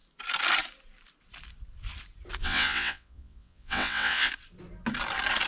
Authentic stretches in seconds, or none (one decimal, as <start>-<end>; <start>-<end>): 0.0-2.4; 4.3-5.5